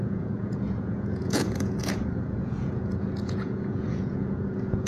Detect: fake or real fake